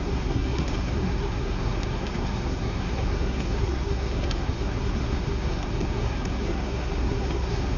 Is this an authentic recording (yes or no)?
no